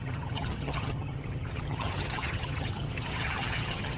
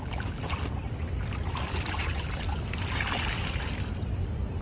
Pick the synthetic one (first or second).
first